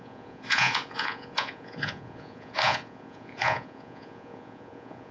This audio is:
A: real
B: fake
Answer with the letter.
B